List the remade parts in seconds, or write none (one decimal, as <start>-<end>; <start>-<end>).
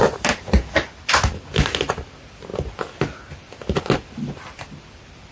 0.0-2.5; 4.1-5.3